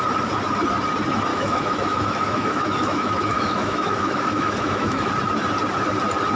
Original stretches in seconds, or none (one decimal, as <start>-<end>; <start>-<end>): 0.0-1.3; 5.1-6.4